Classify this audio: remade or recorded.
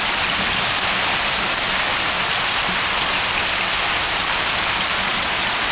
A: recorded